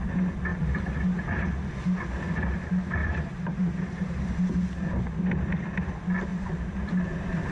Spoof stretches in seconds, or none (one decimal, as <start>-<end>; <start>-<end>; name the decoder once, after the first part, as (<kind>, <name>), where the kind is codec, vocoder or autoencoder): 3.0-4.3 (vocoder, BigVGAN v2); 6.3-6.8